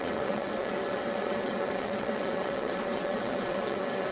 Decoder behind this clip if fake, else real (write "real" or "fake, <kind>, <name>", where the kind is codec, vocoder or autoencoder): fake, vocoder, WaveNeXt